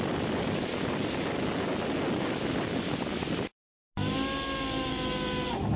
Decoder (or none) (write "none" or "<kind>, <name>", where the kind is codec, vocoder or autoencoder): none